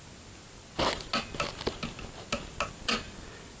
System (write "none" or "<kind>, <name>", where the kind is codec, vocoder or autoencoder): none